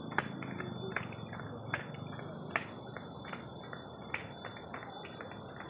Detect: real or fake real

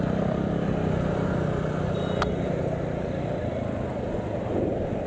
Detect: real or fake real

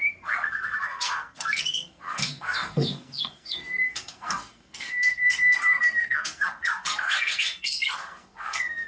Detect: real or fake fake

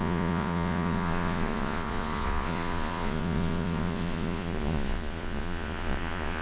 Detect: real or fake fake